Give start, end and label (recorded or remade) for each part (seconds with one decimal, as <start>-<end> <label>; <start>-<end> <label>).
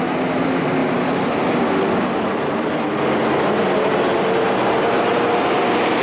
0.0-6.0 recorded